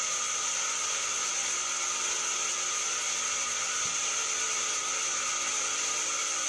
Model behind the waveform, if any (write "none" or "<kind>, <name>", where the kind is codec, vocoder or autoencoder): none